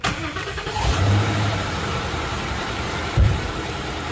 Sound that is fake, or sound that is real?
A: fake